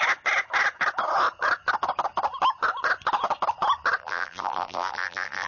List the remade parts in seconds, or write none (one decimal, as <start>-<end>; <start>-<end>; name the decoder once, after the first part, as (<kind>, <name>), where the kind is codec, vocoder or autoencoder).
4.0-5.5 (vocoder, BigVGAN v2)